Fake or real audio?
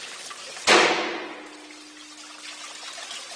real